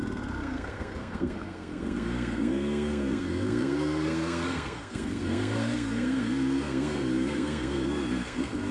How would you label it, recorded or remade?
remade